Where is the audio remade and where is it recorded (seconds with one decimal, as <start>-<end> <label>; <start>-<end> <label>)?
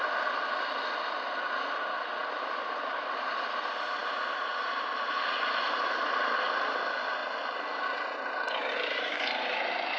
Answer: 0.0-10.0 recorded